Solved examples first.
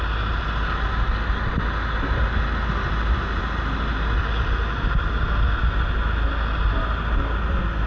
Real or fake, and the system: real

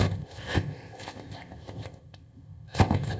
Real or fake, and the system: fake, codec, ZipCodec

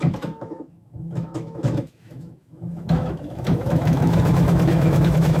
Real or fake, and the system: fake, autoencoder, DAC-VAE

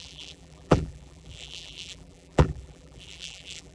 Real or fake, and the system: fake, vocoder, BigVGAN v2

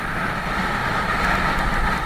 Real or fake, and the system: real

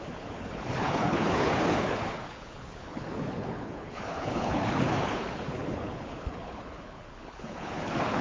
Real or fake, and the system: fake, codec, HILCodec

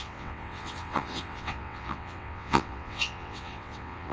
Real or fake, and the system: fake, vocoder, WaveNeXt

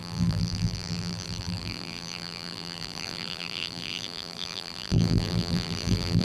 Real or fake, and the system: fake, vocoder, BigVGAN v2